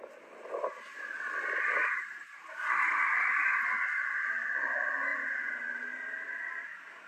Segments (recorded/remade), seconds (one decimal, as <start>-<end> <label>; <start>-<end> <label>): 0.0-1.8 recorded; 1.8-3.6 remade; 3.6-5.1 recorded; 5.1-6.4 remade; 6.4-7.1 recorded